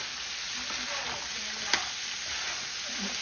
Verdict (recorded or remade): recorded